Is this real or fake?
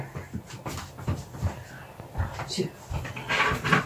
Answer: real